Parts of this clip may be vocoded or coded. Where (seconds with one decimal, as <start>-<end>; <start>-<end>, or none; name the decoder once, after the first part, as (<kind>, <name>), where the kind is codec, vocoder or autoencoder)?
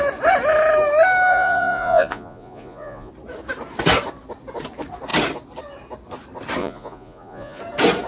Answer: 1.3-3.1 (vocoder, Vocos); 6.6-7.6